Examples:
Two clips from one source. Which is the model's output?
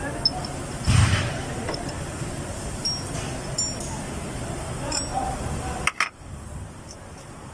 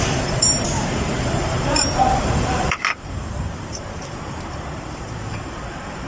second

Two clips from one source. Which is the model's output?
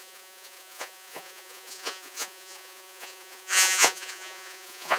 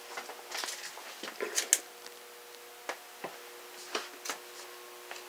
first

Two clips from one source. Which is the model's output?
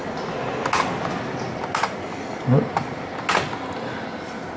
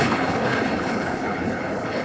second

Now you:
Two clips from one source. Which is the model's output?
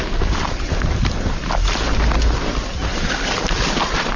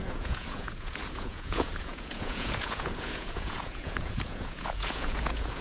second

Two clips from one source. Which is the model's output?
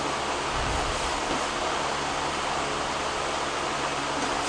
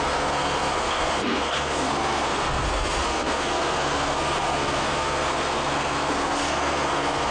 second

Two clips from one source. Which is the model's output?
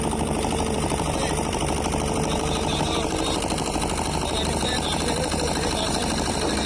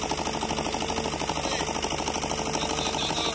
first